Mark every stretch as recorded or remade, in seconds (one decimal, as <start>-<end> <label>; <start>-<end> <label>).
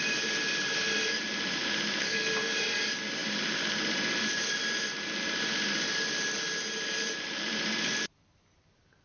0.0-1.6 remade; 1.6-2.4 recorded; 2.4-9.0 remade